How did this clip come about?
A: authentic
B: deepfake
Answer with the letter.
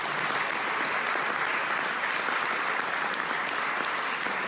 A